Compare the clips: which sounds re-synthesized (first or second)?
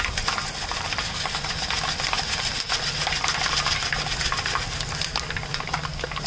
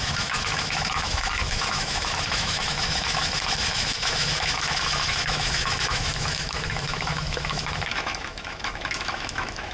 second